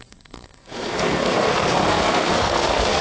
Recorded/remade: remade